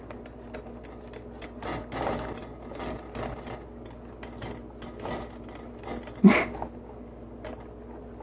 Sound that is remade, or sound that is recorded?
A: recorded